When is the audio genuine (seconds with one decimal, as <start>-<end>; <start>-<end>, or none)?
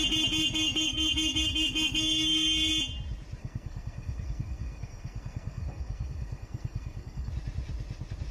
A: 0.0-0.4; 2.7-3.4; 7.3-8.3